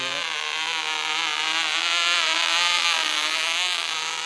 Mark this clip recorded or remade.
recorded